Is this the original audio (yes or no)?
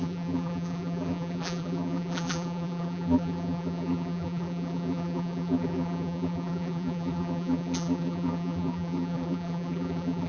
no